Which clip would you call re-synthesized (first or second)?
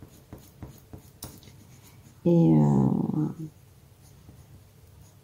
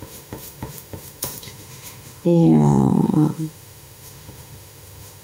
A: second